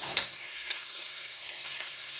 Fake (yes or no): yes